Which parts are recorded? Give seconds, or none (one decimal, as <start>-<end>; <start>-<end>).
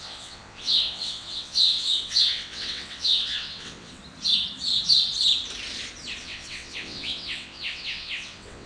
4.0-6.2